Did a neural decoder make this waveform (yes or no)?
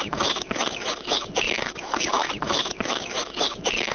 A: yes